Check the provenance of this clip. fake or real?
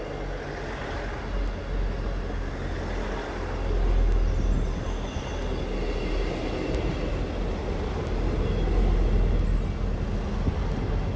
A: real